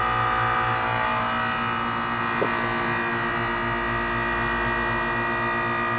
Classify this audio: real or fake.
real